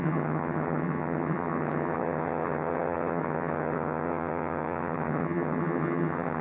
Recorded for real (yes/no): no